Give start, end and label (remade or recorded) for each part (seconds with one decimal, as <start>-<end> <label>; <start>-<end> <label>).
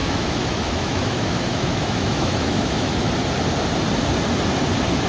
0.0-3.1 remade; 3.1-5.1 recorded